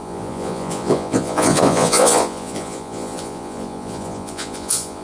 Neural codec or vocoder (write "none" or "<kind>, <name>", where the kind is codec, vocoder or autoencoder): vocoder, Vocos